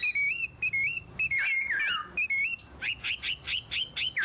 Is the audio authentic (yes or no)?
yes